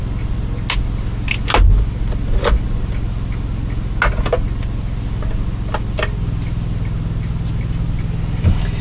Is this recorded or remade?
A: recorded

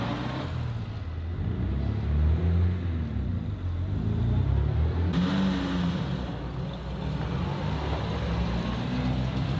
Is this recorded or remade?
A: recorded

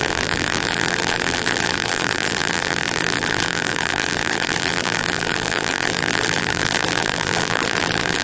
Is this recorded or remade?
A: remade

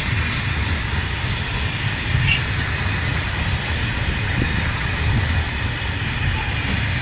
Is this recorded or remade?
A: recorded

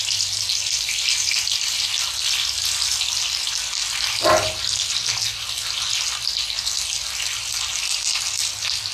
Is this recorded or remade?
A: recorded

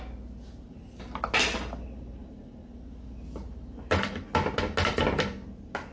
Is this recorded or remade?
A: recorded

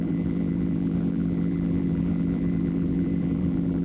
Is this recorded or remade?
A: remade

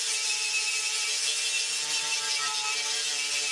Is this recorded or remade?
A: remade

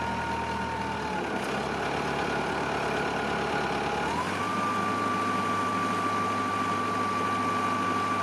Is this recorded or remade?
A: recorded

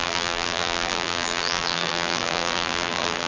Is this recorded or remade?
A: remade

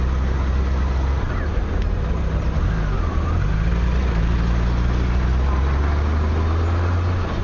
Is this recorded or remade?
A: recorded